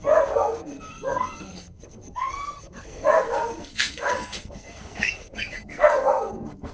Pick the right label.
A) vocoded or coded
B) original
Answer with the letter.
A